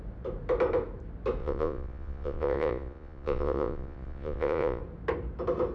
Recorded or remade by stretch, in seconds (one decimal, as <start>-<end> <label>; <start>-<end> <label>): 0.0-1.4 recorded; 1.4-4.8 remade; 4.8-5.7 recorded